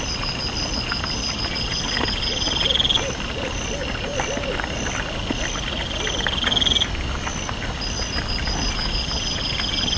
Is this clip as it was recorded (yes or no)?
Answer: yes